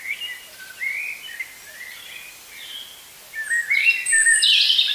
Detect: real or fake real